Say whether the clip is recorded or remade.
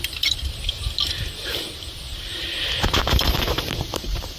recorded